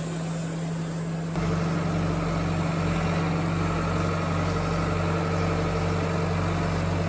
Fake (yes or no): no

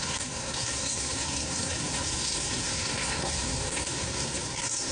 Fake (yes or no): yes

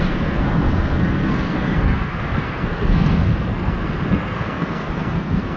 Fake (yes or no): yes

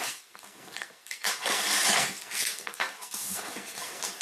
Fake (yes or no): yes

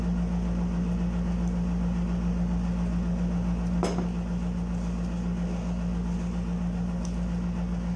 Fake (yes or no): no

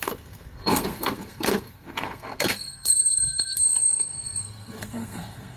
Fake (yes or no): yes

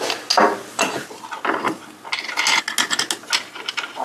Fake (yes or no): no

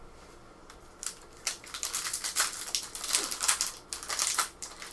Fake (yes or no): no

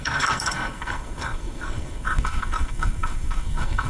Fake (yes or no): yes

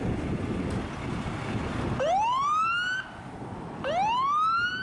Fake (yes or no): no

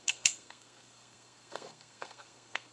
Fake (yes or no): yes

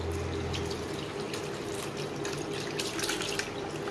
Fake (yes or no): no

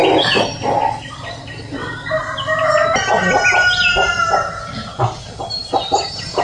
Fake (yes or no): no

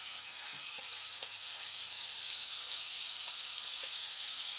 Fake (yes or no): yes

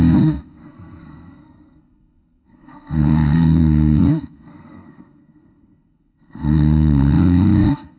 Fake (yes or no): yes